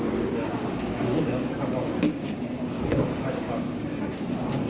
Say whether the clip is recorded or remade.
remade